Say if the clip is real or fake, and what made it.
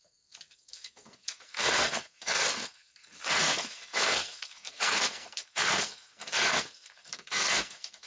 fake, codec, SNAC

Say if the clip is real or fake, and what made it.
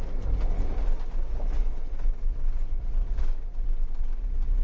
real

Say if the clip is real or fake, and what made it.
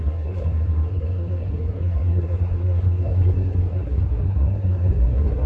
fake, codec, SNAC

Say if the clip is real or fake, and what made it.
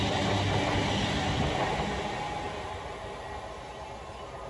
real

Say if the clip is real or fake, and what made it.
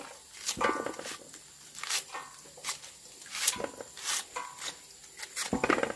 real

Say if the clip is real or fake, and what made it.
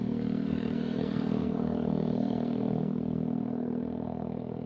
fake, codec, SNAC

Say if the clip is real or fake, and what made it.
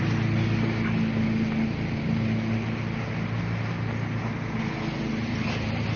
real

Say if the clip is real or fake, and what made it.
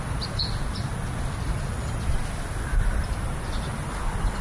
real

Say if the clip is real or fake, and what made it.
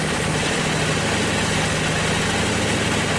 real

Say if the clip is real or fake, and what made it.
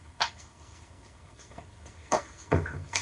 fake, codec, SNAC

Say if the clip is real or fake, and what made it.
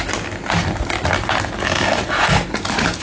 real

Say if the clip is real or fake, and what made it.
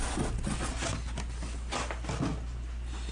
real